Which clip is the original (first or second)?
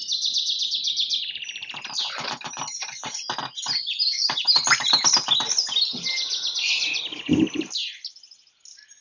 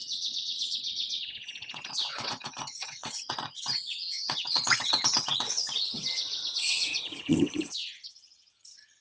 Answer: first